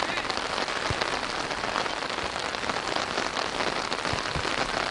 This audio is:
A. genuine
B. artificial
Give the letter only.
A